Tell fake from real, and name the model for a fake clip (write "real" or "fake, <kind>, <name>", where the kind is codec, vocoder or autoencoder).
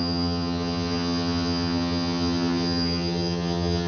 fake, vocoder, HiFi-GAN